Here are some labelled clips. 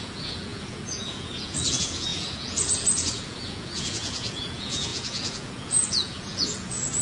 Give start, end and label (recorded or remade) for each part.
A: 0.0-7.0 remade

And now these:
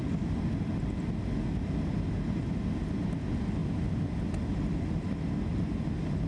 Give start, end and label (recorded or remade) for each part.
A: 0.0-6.3 recorded

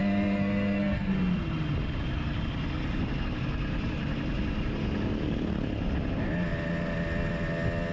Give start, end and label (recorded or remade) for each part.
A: 0.0-1.1 remade; 1.1-7.9 recorded

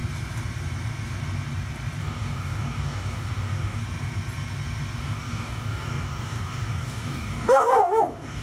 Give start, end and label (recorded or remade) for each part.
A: 0.0-2.0 recorded; 2.0-3.8 remade; 3.8-5.0 recorded; 5.0-8.4 remade

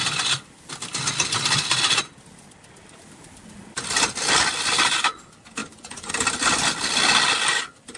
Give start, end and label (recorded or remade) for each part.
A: 0.0-5.6 recorded; 5.6-6.1 remade; 6.1-8.0 recorded

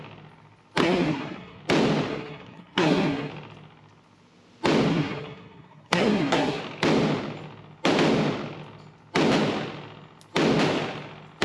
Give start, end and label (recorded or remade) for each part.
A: 0.0-0.8 recorded; 0.8-1.6 remade; 1.6-2.1 recorded; 2.1-3.3 remade; 3.3-4.9 recorded; 4.9-6.6 remade; 6.6-11.4 recorded

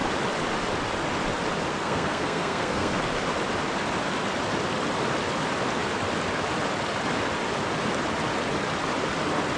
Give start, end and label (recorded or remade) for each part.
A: 0.0-1.7 recorded; 1.7-3.0 remade; 3.0-9.6 recorded